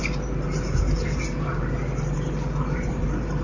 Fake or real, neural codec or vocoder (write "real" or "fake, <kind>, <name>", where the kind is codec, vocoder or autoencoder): fake, vocoder, BigVGAN v2